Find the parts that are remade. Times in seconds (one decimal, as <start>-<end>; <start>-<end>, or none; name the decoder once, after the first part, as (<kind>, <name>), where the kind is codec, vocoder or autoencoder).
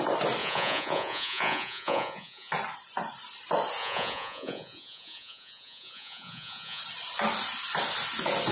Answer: 0.4-2.5 (vocoder, Vocos); 3.8-6.8